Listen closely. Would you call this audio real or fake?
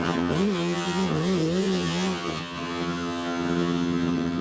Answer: fake